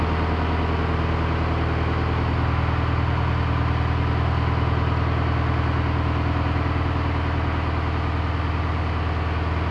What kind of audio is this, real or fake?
real